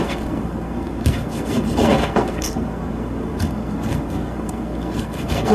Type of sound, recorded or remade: remade